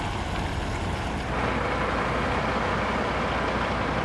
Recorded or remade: recorded